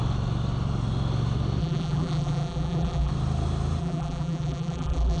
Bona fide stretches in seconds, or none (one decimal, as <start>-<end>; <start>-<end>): 0.0-1.6; 3.1-3.8